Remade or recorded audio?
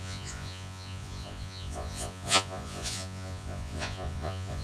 remade